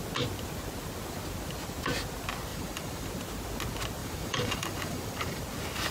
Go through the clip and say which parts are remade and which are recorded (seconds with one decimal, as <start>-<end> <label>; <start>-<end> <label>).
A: 0.0-2.5 recorded; 2.5-3.1 remade; 3.1-4.0 recorded; 4.0-5.4 remade; 5.4-5.9 recorded